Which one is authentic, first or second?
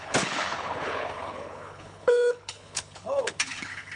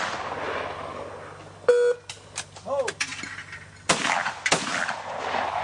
second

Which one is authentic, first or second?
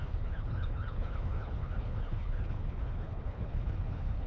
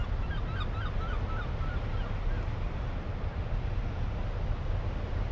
second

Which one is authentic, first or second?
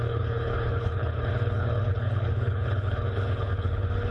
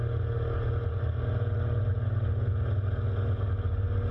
second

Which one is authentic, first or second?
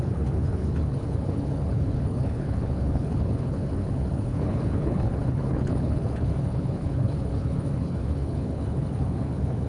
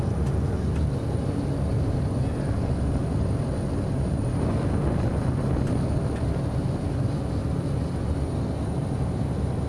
second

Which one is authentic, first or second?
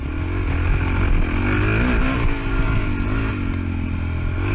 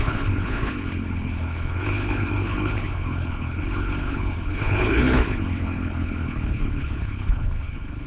first